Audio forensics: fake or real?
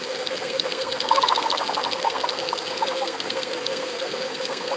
fake